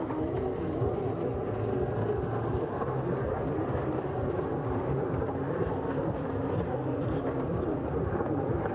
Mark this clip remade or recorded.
recorded